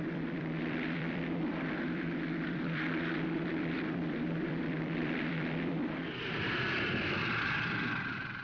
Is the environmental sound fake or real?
fake